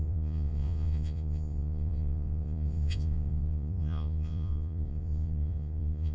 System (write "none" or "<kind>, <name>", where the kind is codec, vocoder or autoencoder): vocoder, Vocos